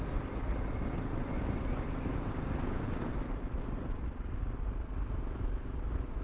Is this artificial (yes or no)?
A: no